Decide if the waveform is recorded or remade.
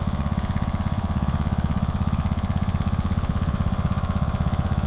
remade